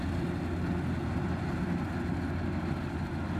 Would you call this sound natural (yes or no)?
yes